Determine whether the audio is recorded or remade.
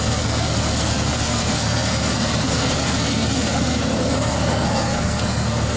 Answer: remade